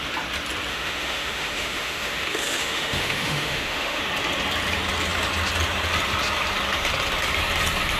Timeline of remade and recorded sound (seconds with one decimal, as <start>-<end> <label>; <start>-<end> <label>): 0.0-0.7 recorded; 0.7-4.0 remade; 4.0-8.0 recorded